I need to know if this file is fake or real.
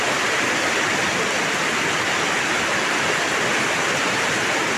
fake